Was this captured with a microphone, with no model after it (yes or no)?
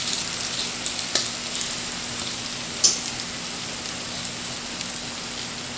yes